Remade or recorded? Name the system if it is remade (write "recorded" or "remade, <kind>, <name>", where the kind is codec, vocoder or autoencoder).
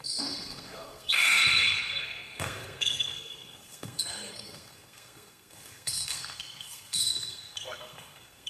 remade, codec, SNAC